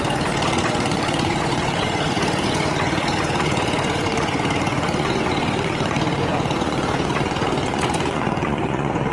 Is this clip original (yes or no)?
no